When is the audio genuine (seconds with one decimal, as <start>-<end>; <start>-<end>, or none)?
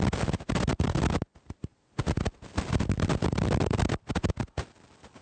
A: 0.0-5.2